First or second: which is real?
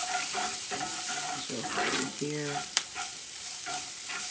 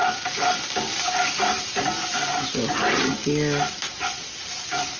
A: second